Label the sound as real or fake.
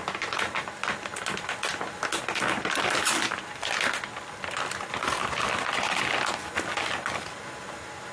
real